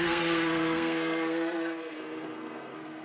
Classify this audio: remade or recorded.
remade